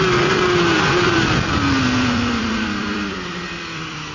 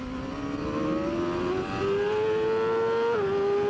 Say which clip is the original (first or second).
second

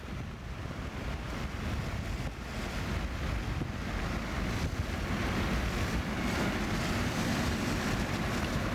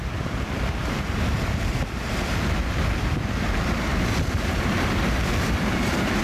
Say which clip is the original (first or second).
first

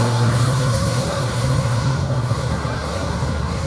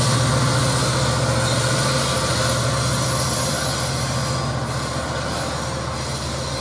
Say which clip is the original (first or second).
second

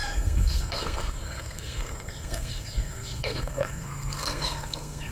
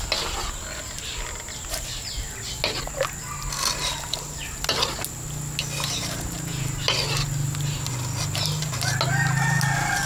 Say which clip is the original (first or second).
second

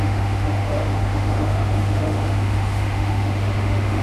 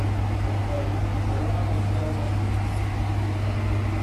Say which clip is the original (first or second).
second